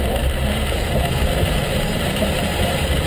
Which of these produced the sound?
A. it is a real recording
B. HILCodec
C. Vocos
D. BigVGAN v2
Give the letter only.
D